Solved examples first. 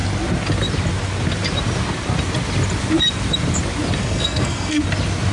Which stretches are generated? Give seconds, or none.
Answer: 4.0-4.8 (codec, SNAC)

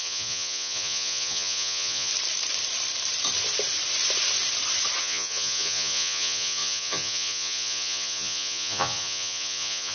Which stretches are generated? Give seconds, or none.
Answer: 0.0-2.1 (vocoder, Vocos); 5.0-9.9

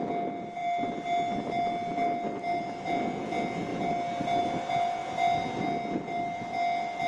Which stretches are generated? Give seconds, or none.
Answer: none

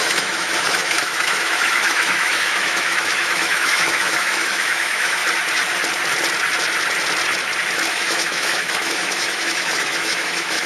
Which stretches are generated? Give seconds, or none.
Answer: 0.0-5.2 (autoencoder, DAC-VAE); 7.9-10.7